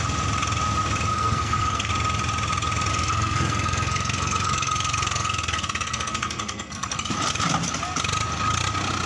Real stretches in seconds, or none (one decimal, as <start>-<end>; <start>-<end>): 0.0-1.1; 1.9-2.9; 7.1-9.1